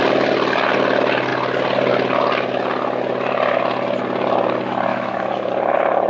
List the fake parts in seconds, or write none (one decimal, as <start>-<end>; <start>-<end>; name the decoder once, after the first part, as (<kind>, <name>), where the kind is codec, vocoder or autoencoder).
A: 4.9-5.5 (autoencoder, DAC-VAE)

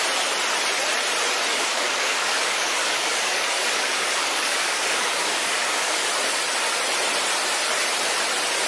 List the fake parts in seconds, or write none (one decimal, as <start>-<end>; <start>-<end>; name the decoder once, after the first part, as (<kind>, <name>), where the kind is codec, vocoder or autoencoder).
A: 1.5-6.1 (codec, DAC)

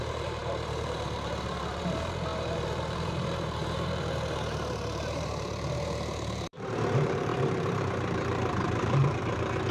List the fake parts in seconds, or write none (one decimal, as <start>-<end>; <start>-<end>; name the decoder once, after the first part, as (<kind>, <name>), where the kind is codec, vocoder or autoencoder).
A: 0.0-9.7 (vocoder, BigVGAN v2)

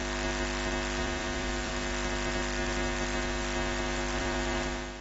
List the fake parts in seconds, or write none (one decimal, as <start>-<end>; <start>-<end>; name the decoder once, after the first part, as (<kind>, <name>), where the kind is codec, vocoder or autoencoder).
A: 1.0-1.7 (vocoder, BigVGAN v2); 4.2-5.0

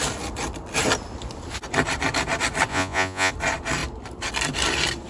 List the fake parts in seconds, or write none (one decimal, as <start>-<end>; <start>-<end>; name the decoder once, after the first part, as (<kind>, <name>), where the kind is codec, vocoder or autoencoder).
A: 2.7-3.3 (vocoder, Vocos)

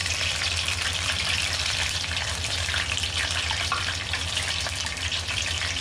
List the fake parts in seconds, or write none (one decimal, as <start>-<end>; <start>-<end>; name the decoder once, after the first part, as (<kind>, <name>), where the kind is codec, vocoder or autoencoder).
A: 0.0-5.8 (vocoder, BigVGAN v2)

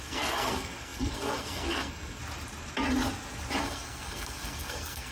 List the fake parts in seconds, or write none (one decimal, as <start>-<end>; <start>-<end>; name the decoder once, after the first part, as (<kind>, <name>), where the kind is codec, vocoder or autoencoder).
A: 0.0-2.2 (codec, SNAC); 3.6-5.1

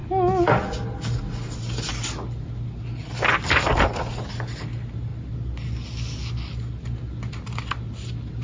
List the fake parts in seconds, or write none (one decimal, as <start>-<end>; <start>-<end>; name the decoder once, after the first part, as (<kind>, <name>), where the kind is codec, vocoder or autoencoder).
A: none